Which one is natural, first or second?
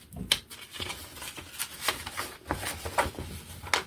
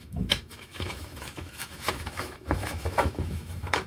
first